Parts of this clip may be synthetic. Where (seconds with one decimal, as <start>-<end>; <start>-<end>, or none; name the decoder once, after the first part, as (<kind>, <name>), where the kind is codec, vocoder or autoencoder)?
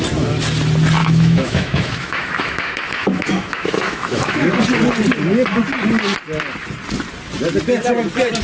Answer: 1.0-4.6 (autoencoder, DAC-VAE)